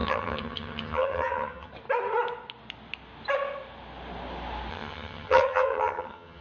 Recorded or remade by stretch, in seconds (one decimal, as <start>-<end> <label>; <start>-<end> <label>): 0.0-1.7 remade; 1.7-4.7 recorded; 4.7-6.4 remade